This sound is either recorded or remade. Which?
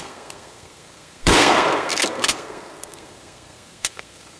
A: remade